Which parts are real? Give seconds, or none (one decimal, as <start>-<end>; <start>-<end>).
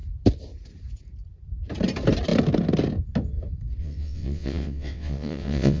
0.0-3.8